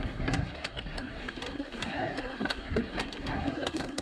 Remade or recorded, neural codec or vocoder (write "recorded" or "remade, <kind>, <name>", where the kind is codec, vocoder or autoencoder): remade, codec, SNAC